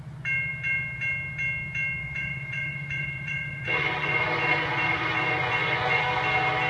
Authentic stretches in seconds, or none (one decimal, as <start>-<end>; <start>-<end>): 0.0-2.0; 6.0-6.7